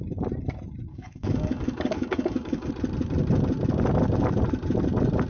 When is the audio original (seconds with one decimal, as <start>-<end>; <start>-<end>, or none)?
0.0-0.9; 2.7-5.3